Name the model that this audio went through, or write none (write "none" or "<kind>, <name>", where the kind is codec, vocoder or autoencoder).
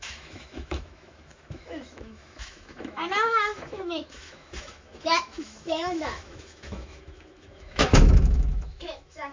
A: autoencoder, DAC-VAE